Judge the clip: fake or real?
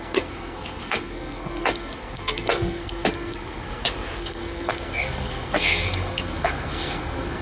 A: fake